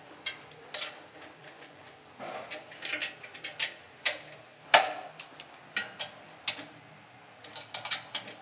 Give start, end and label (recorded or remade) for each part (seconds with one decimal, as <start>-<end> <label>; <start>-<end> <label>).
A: 0.0-1.4 recorded; 1.4-2.0 remade; 2.0-8.4 recorded